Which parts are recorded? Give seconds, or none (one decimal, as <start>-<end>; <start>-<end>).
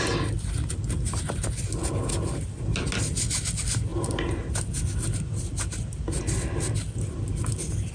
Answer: 0.0-7.9